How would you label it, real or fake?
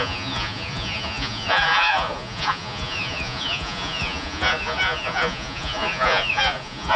fake